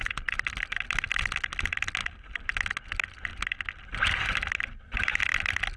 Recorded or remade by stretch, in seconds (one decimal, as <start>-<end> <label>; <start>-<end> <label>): 0.0-2.0 recorded; 2.0-2.6 remade; 2.6-3.3 recorded; 3.3-4.8 remade; 4.8-5.3 recorded; 5.3-5.8 remade